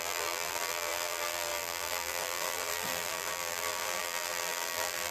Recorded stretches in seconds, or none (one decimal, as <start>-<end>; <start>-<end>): none